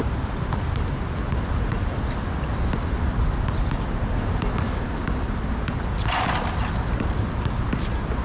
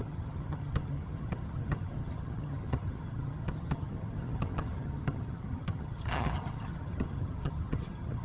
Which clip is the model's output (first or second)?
second